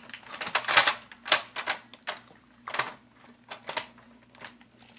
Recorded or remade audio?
recorded